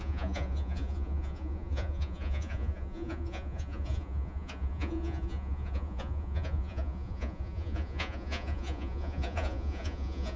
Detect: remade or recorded remade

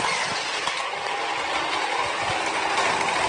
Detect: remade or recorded recorded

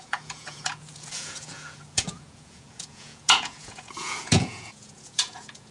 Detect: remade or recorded remade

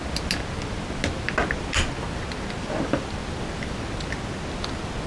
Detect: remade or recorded recorded